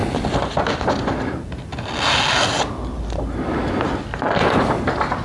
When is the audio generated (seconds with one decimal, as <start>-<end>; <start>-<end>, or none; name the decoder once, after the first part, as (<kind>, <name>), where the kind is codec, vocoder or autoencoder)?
none

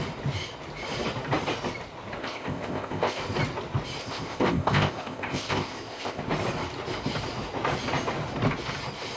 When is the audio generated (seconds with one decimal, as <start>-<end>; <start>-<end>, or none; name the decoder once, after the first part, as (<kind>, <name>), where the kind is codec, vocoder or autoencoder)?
2.2-3.2 (codec, ZipCodec); 4.0-6.2

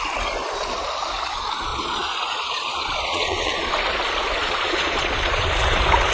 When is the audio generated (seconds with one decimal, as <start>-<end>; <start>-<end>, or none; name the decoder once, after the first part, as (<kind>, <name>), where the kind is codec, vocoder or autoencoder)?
1.7-3.7 (vocoder, Vocos); 4.4-5.4

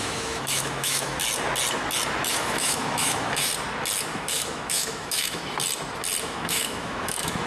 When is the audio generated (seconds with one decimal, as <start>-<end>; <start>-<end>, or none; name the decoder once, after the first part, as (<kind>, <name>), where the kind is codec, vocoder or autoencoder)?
0.0-1.2 (autoencoder, DAC-VAE); 2.3-3.5; 4.1-5.4; 6.2-7.5

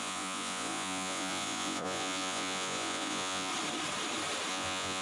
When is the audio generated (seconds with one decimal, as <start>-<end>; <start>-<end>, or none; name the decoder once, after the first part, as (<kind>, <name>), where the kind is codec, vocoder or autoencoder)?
0.0-3.5 (vocoder, Vocos); 4.5-5.0

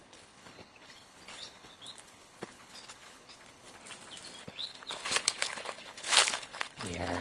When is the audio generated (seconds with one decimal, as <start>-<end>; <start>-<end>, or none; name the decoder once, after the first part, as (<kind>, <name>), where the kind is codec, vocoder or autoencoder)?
0.0-3.8 (codec, HILCodec); 4.4-7.2